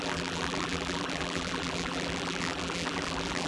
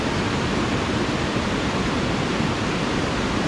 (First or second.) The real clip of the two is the second